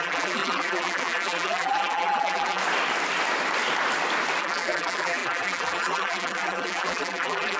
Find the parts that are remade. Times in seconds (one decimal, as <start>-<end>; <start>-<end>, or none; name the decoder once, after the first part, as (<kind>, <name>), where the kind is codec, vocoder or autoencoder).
0.0-2.6 (vocoder, BigVGAN v2); 4.4-7.6